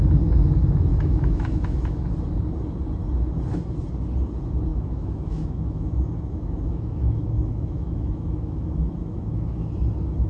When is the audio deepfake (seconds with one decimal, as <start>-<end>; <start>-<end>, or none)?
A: 0.9-2.1; 4.7-9.7